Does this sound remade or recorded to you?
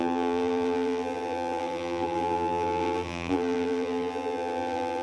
remade